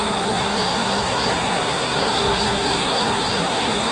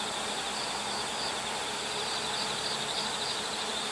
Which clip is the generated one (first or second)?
first